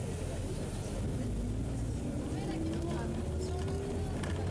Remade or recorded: recorded